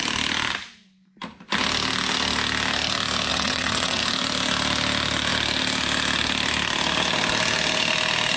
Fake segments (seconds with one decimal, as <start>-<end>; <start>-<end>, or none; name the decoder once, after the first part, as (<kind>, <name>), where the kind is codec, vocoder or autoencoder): 3.3-4.0 (vocoder, WaveNeXt)